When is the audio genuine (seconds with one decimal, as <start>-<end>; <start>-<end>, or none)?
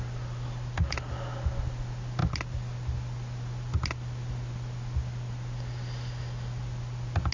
0.0-7.3